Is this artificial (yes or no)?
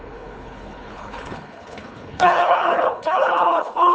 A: yes